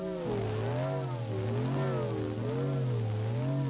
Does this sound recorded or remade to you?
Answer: recorded